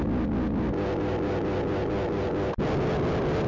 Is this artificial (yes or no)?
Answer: no